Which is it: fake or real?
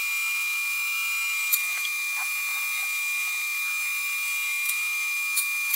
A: fake